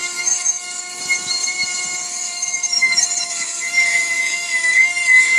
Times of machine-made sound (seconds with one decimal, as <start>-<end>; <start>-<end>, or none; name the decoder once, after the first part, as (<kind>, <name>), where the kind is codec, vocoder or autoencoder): 0.0-1.0 (codec, DAC); 2.1-5.4